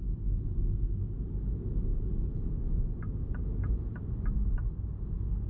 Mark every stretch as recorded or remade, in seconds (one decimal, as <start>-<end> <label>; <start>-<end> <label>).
0.0-5.5 recorded